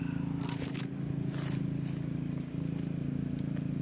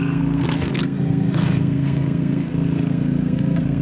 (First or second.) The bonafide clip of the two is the first